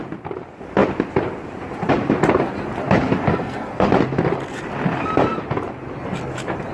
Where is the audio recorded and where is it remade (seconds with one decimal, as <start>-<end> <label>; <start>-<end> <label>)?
0.0-3.2 recorded; 3.2-3.9 remade; 3.9-6.7 recorded